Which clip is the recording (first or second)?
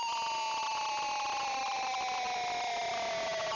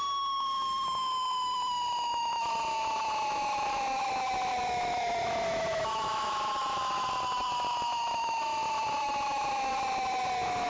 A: first